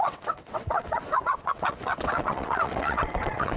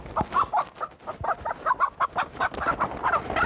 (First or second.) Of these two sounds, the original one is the second